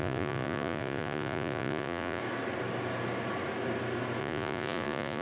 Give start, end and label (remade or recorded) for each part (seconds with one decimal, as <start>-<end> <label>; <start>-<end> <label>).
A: 0.0-2.2 remade; 2.2-4.2 recorded; 4.2-5.2 remade